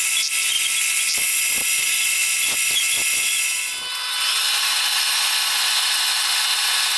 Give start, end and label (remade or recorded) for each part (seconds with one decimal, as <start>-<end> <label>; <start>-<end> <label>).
0.0-7.0 recorded